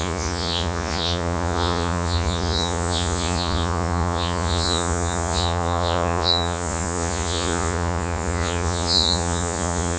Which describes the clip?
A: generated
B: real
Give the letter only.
A